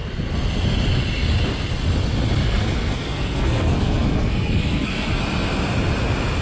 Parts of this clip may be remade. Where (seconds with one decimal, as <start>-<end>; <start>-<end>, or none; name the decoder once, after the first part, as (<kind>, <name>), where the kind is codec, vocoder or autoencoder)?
2.4-5.2 (codec, SNAC)